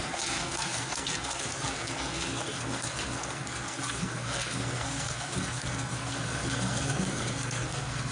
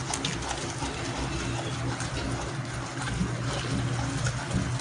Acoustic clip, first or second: second